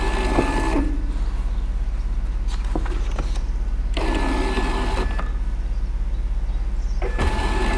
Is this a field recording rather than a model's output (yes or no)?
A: yes